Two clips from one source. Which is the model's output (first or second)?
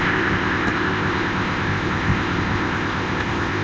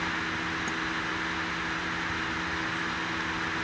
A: first